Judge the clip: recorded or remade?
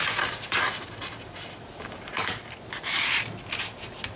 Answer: recorded